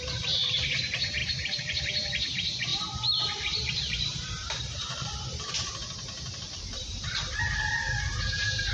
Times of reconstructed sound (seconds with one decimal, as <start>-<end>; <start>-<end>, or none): 0.0-8.7